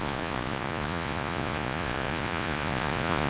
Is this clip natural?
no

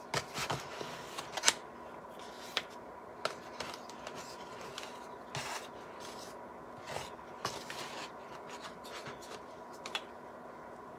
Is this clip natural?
yes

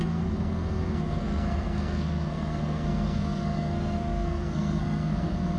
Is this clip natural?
no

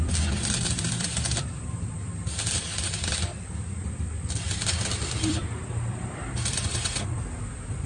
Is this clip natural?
no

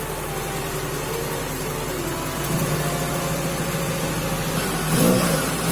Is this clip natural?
yes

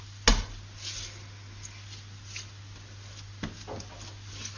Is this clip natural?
yes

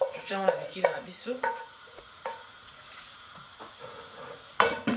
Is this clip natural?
no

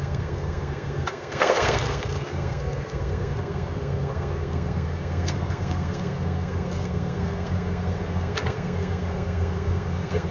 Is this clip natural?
no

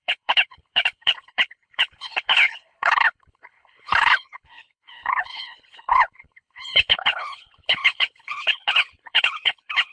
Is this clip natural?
no